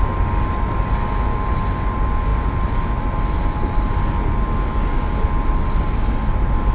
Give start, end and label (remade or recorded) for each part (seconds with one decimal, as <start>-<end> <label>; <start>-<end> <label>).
0.0-6.7 recorded